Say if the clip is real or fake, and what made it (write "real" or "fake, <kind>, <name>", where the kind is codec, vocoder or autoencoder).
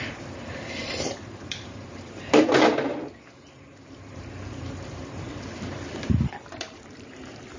fake, vocoder, BigVGAN v2